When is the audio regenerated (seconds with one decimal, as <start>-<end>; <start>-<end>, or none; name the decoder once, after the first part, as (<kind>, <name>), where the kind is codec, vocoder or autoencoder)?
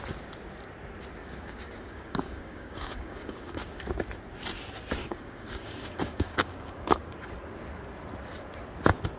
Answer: 1.2-3.8 (codec, DAC); 5.0-7.3